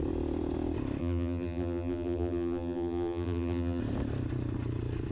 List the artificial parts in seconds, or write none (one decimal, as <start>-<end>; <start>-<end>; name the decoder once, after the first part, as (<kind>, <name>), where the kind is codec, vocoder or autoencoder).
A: 1.0-3.8 (vocoder, BigVGAN v2)